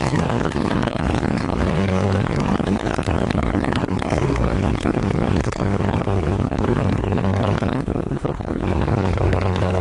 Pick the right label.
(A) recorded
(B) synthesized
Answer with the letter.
B